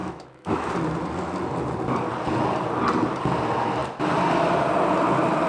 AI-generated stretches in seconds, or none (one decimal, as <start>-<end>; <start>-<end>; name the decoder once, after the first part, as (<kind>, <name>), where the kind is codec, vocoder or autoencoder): 0.0-0.7 (autoencoder, DAC-VAE)